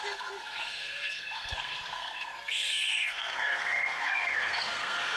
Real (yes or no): no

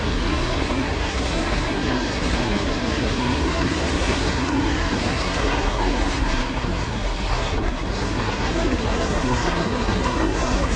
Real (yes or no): no